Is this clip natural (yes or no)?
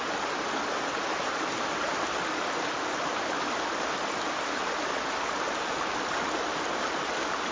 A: yes